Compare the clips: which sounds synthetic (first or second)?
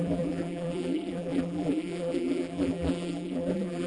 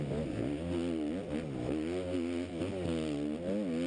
first